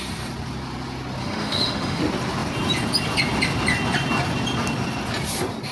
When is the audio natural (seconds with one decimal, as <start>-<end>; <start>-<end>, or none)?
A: 0.0-1.2; 2.0-5.7